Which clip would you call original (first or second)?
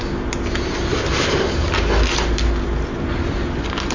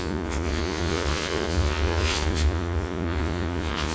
first